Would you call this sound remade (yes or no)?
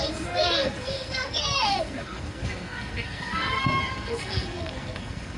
yes